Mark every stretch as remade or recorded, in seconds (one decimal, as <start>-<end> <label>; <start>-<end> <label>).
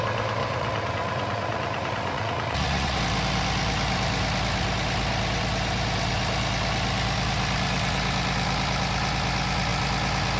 0.0-0.4 recorded; 0.4-3.0 remade; 3.0-10.4 recorded